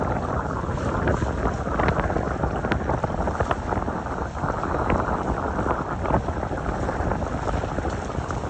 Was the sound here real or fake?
real